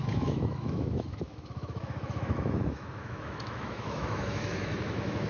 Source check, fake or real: fake